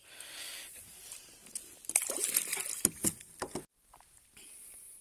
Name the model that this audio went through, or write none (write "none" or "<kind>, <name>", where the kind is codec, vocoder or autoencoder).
none